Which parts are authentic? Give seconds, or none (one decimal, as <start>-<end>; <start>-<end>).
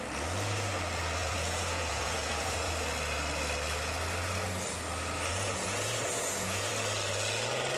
0.0-1.2; 2.7-5.3; 6.7-7.8